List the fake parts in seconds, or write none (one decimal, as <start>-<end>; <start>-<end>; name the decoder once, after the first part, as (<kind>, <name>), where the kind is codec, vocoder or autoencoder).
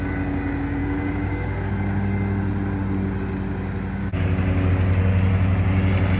0.8-1.7 (codec, DAC); 4.0-4.7